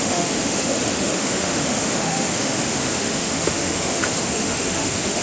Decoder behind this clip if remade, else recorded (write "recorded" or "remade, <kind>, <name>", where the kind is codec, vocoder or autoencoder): remade, autoencoder, DAC-VAE